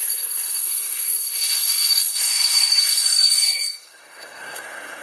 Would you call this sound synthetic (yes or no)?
yes